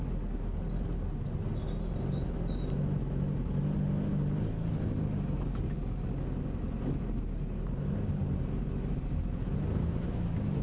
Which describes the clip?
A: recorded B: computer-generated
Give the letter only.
A